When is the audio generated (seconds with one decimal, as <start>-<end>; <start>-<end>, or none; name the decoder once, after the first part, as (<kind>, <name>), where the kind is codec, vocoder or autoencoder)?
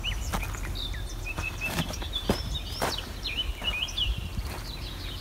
1.1-4.2 (vocoder, BigVGAN v2)